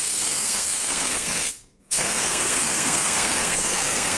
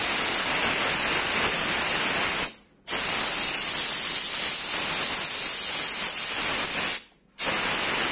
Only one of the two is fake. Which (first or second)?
first